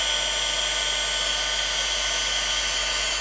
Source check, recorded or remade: recorded